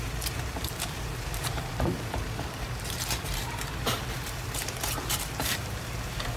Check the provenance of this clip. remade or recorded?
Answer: remade